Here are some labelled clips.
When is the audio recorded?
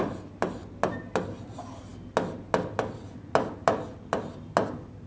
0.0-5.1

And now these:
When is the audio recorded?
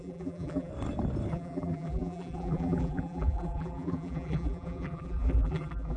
0.7-1.3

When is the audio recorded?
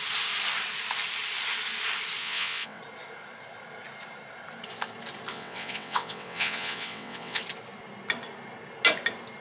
0.0-2.2; 2.8-5.3; 7.4-9.4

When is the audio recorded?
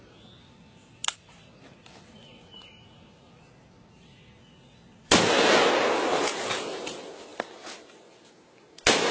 0.0-1.0; 4.3-9.1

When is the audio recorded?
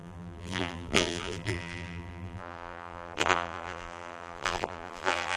none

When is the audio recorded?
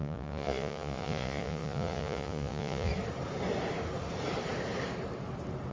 2.9-5.7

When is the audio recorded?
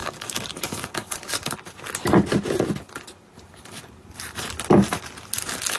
1.5-5.8